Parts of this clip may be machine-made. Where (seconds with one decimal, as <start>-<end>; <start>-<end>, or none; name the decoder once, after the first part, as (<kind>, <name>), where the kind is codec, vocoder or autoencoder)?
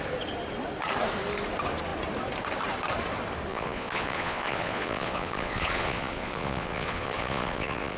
3.5-8.0 (vocoder, Vocos)